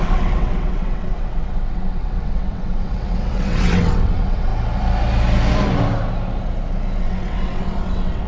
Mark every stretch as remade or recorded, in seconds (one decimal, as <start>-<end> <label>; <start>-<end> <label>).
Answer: 0.0-4.5 remade; 4.5-7.0 recorded; 7.0-8.3 remade